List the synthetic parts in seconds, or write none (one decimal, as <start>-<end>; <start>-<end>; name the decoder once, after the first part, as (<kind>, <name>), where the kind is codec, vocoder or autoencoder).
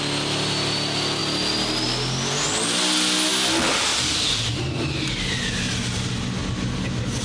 none